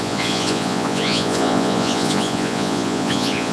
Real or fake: fake